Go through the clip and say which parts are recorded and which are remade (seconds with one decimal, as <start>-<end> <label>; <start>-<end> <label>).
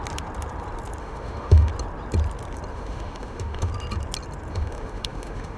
0.0-1.0 recorded; 1.0-1.7 remade; 1.7-2.7 recorded; 2.7-3.7 remade; 3.7-4.5 recorded; 4.5-5.6 remade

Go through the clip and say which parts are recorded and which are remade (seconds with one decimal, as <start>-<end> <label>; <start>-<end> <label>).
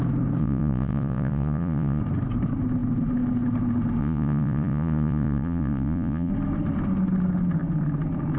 0.0-0.4 recorded; 0.4-2.0 remade; 2.0-4.0 recorded; 4.0-6.3 remade; 6.3-8.4 recorded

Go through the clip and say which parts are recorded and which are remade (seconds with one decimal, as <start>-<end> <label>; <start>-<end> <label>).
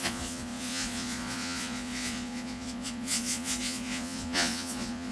0.0-5.1 remade